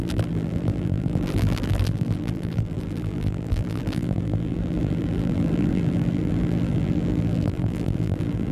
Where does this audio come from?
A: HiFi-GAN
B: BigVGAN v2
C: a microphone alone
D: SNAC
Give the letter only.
B